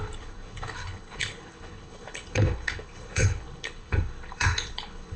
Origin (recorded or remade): remade